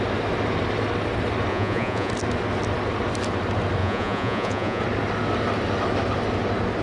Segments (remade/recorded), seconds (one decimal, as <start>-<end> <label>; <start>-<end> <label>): 0.0-1.5 recorded; 1.5-2.1 remade; 2.1-3.8 recorded; 3.8-4.8 remade; 4.8-6.8 recorded